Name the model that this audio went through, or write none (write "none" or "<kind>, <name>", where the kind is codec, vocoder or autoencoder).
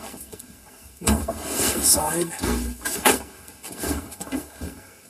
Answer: codec, SNAC